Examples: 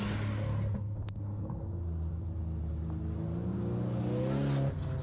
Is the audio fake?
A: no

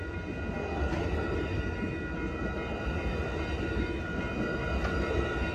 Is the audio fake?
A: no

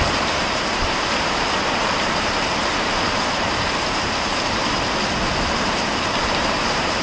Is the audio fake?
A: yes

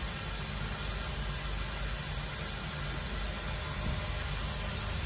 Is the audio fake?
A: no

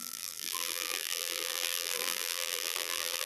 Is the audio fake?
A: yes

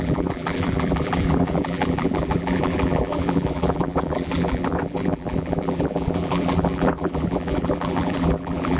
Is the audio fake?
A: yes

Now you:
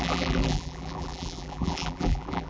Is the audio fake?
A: yes